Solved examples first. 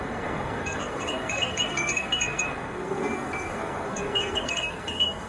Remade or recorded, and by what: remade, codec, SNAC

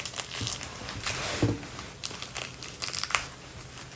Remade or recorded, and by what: recorded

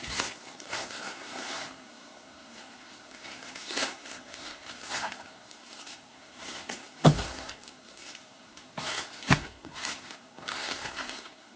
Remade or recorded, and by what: remade, codec, SNAC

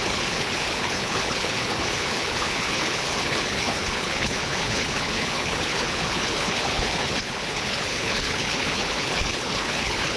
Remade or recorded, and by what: remade, codec, HILCodec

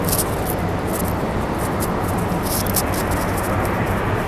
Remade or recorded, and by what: recorded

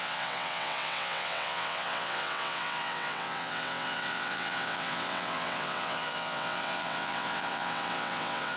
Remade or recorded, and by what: remade, vocoder, WaveNeXt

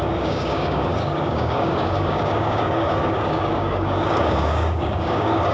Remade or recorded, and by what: remade, codec, DAC